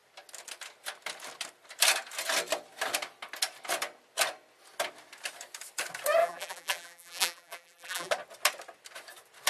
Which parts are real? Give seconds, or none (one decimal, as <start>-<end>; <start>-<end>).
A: 0.0-6.2; 8.1-9.5